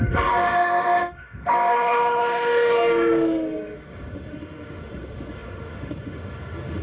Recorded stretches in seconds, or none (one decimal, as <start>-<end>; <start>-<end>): none